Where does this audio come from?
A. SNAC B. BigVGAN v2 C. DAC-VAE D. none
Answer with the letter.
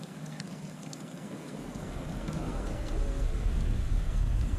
A